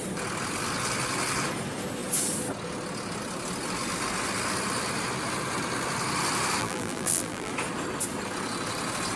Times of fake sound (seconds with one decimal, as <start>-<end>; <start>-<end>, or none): 6.6-7.5